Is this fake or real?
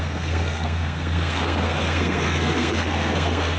fake